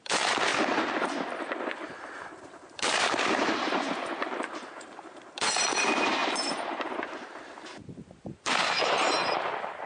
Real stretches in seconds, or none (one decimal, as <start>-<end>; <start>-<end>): 0.5-1.6